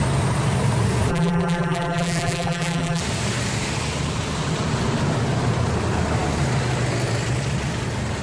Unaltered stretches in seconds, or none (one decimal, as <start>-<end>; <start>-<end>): 0.0-1.1; 3.0-8.2